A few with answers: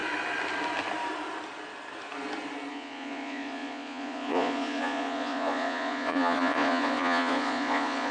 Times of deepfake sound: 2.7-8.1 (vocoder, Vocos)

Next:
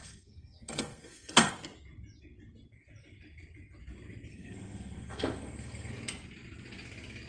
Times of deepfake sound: 0.0-1.5 (codec, SNAC); 4.3-5.9

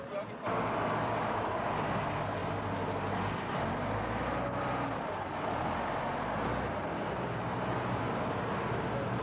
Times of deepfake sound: none

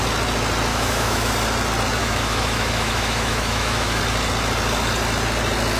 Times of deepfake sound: 0.7-1.3 (autoencoder, DAC-VAE); 2.0-4.0